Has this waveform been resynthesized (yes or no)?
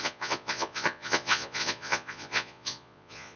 yes